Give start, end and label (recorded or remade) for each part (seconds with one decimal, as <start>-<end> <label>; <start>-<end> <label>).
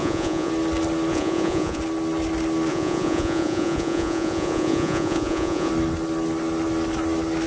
0.0-0.5 remade; 0.5-1.1 recorded; 1.1-1.8 remade; 1.8-2.7 recorded; 2.7-5.7 remade; 5.7-7.5 recorded